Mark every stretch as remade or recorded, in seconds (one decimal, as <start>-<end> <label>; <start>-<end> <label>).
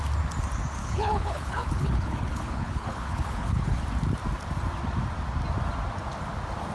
0.0-0.8 recorded; 0.8-3.8 remade; 3.8-6.7 recorded